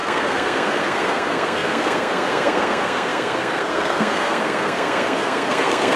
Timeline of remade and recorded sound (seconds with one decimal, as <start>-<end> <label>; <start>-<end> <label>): 0.0-6.0 remade